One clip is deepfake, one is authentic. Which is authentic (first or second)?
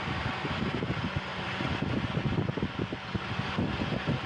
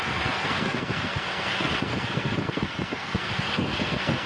first